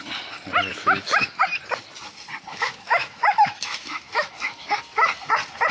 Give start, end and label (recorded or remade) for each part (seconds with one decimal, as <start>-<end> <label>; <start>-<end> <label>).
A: 0.0-0.7 recorded; 0.7-1.4 remade; 1.4-2.5 recorded; 2.5-4.7 remade; 4.7-5.7 recorded